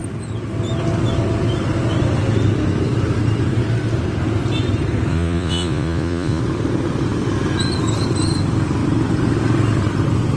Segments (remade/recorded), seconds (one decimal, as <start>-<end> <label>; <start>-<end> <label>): 0.0-5.1 recorded; 5.1-6.4 remade; 6.4-10.4 recorded

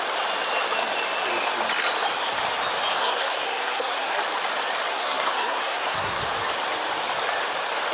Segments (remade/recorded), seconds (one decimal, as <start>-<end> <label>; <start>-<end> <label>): 0.0-2.9 recorded; 2.9-4.2 remade; 4.2-4.9 recorded; 4.9-6.2 remade; 6.2-7.9 recorded

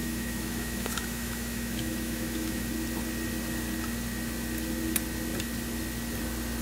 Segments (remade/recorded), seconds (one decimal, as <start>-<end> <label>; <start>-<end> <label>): 0.0-2.7 remade; 2.7-6.6 recorded

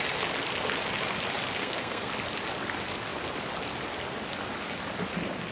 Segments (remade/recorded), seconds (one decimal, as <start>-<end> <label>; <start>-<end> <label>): 0.0-1.6 recorded; 1.6-2.1 remade; 2.1-5.5 recorded

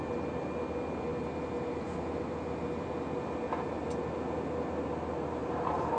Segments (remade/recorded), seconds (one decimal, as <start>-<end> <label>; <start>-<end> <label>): 0.0-6.0 recorded

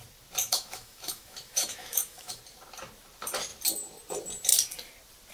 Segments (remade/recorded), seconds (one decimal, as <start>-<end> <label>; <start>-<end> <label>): 0.0-0.4 recorded; 0.4-2.4 remade; 2.4-5.3 recorded